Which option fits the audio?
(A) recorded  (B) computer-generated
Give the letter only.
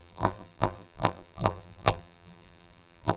B